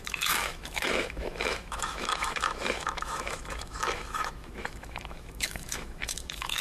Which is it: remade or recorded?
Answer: remade